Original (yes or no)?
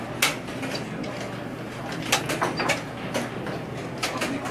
yes